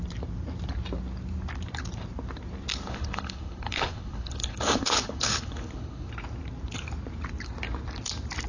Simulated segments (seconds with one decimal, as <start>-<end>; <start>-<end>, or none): 2.7-6.1